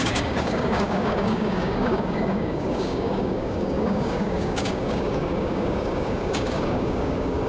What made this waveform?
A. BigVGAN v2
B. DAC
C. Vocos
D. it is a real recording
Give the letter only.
B